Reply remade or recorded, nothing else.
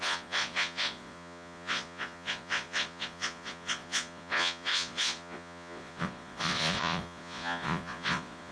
remade